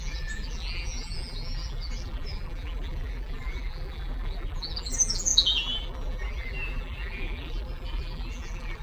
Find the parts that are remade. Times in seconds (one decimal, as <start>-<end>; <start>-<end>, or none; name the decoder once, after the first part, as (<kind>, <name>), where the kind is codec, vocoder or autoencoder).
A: 0.0-8.8 (vocoder, BigVGAN v2)